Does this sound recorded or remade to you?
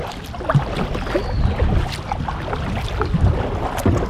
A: recorded